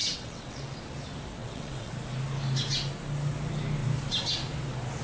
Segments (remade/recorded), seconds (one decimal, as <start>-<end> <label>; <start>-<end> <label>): 0.0-0.8 remade; 0.8-1.4 recorded; 1.4-1.9 remade; 1.9-5.0 recorded